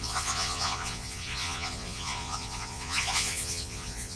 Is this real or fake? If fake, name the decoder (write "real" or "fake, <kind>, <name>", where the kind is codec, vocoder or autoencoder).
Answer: fake, vocoder, Vocos